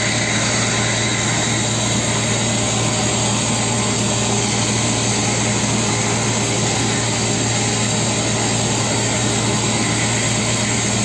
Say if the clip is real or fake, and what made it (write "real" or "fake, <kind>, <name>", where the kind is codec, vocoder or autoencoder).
real